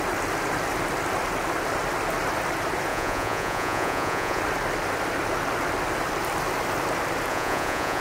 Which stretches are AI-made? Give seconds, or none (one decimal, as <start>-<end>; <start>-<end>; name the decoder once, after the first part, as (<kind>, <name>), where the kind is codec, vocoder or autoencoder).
2.9-4.4 (vocoder, Vocos); 7.3-8.0

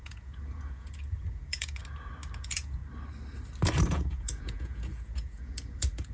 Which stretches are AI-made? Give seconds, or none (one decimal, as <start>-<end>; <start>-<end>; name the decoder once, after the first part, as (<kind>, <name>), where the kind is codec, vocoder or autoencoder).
0.0-1.8 (vocoder, Vocos); 2.4-2.8; 3.9-6.1

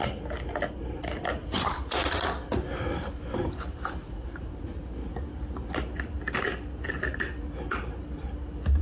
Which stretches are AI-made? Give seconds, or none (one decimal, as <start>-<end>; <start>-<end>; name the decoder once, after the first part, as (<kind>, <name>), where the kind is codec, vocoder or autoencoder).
1.4-2.3 (vocoder, Vocos); 4.0-4.8

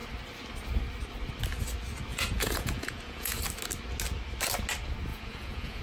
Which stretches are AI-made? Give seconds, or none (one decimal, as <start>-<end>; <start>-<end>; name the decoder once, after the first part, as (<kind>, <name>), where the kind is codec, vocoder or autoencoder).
2.1-3.4 (vocoder, Vocos); 5.1-5.8